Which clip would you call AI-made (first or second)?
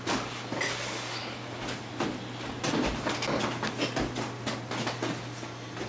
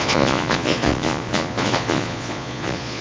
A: second